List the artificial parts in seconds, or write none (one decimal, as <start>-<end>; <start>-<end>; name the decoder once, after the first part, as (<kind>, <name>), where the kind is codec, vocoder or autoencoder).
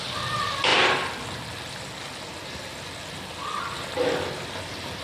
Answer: none